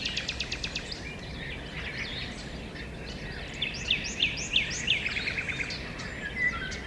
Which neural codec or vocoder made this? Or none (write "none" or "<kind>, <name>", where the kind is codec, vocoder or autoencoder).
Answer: none